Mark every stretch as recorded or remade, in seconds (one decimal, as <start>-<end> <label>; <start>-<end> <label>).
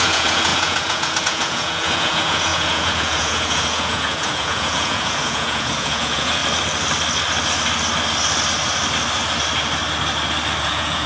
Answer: 0.0-6.4 remade; 6.4-10.6 recorded; 10.6-11.1 remade